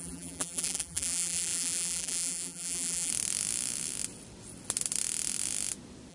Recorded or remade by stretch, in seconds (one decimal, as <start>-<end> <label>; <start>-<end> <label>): 0.0-3.1 remade; 3.1-6.1 recorded